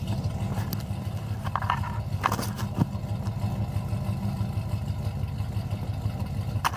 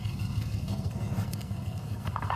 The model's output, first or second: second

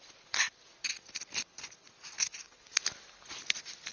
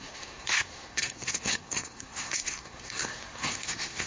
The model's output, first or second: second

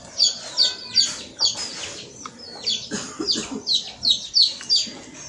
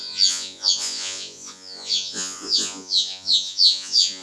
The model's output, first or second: second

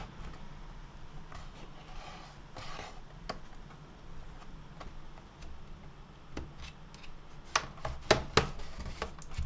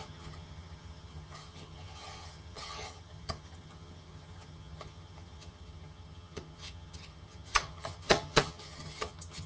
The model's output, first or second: second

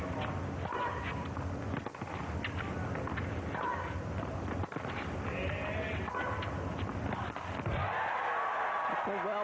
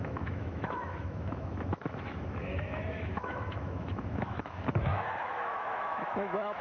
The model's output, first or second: second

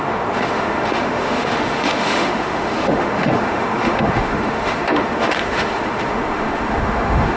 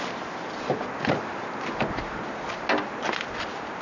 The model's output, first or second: first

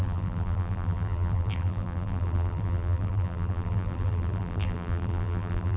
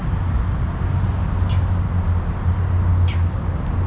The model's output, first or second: first